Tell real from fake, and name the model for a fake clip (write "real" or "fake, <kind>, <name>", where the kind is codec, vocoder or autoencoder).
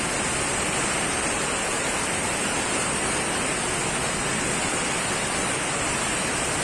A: real